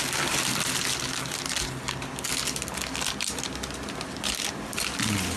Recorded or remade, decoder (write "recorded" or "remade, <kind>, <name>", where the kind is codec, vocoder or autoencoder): recorded